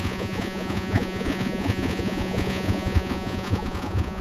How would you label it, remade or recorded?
remade